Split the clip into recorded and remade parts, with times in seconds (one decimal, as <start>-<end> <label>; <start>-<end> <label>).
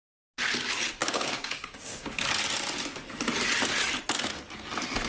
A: 0.0-1.0 recorded; 1.0-2.2 remade; 2.2-5.1 recorded